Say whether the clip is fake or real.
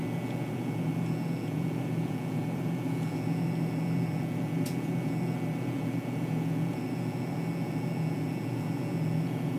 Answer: fake